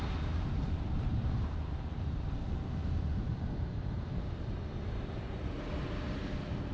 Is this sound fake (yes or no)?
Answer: yes